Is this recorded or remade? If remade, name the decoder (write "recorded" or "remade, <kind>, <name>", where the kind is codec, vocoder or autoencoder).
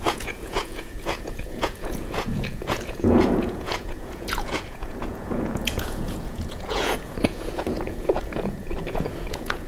remade, vocoder, Vocos